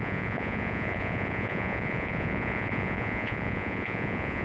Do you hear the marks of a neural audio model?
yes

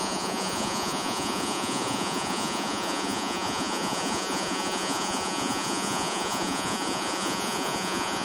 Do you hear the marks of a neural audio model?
yes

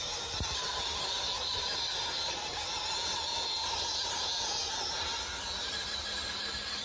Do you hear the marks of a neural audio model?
no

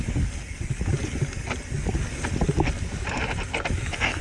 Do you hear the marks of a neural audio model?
no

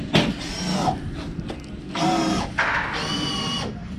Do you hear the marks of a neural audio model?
no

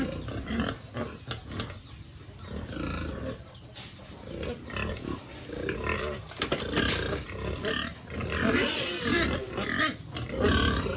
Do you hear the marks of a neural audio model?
no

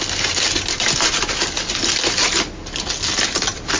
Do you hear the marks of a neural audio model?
no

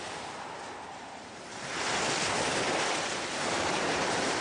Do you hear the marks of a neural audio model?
yes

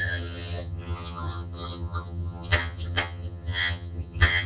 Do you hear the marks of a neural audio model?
yes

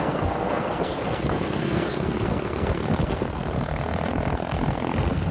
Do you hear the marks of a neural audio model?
yes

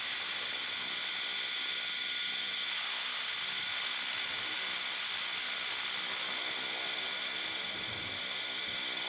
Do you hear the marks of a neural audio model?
no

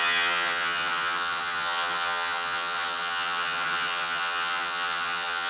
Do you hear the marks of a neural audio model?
yes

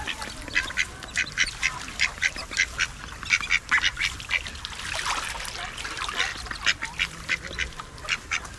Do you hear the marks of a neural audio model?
no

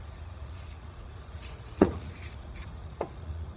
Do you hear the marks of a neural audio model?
yes